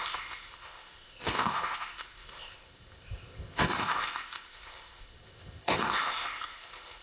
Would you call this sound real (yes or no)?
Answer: no